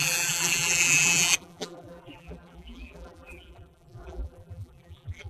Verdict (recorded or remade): remade